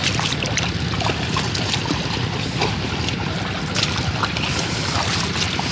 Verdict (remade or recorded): recorded